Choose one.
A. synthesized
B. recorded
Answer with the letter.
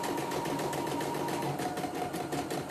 B